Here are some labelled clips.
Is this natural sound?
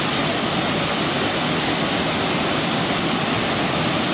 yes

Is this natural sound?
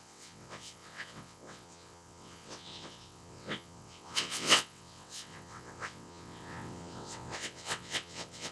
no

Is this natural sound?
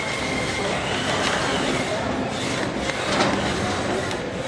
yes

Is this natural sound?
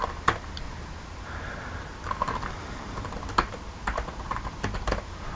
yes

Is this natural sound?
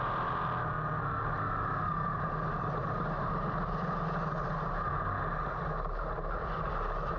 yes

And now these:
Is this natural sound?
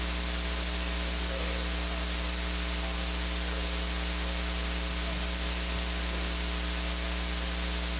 yes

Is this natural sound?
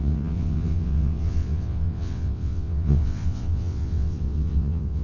no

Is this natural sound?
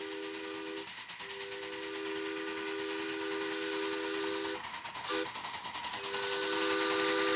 yes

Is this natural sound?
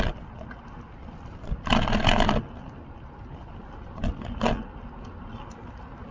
yes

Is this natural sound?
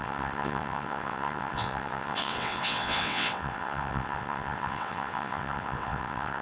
no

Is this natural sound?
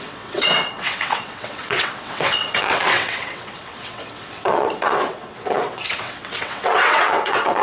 no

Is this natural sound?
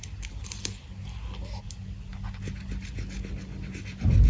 yes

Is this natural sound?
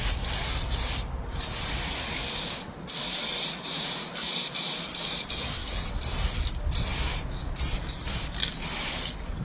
yes